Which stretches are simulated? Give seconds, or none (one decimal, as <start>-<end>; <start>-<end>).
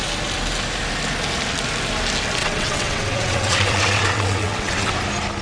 2.4-4.9